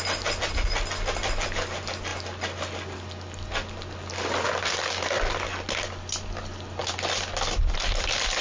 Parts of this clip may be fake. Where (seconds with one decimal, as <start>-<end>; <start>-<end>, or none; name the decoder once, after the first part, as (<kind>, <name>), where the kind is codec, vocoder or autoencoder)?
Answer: none

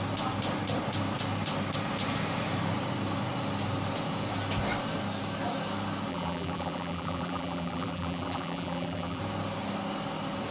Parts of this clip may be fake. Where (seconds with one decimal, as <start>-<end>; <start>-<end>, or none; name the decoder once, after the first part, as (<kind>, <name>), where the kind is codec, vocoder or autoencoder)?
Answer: 6.1-9.2 (vocoder, BigVGAN v2)

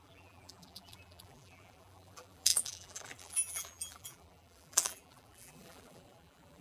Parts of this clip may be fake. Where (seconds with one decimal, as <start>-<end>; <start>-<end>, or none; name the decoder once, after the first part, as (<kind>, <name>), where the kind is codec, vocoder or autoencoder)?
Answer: 0.0-6.6 (vocoder, BigVGAN v2)